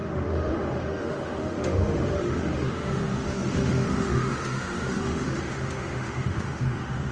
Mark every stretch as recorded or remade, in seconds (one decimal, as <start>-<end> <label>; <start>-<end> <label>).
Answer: 0.0-7.1 remade